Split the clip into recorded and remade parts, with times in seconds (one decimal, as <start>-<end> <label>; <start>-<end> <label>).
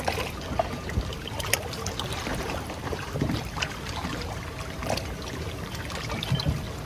0.0-2.3 recorded; 2.3-3.2 remade; 3.2-6.9 recorded